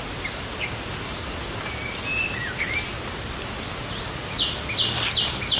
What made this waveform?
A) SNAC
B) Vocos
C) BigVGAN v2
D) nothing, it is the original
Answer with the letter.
D